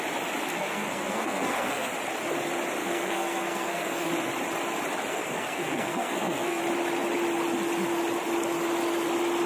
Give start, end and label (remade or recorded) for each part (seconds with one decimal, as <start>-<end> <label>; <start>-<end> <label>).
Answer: 0.0-0.5 recorded; 0.5-1.9 remade; 1.9-2.8 recorded; 2.8-4.1 remade; 4.1-5.1 recorded; 5.1-6.6 remade; 6.6-9.5 recorded